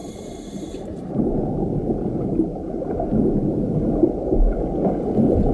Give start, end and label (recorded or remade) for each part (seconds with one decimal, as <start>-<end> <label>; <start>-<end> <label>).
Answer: 0.0-1.2 remade; 1.2-5.5 recorded